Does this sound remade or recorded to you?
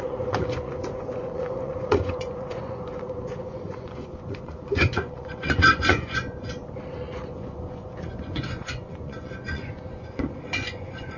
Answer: remade